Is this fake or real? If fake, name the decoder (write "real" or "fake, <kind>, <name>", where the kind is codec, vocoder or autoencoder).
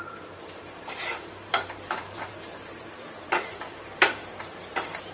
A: fake, vocoder, BigVGAN v2